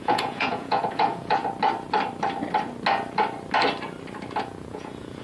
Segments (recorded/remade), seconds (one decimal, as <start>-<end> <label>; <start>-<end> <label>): 0.0-1.4 remade; 1.4-4.4 recorded; 4.4-5.2 remade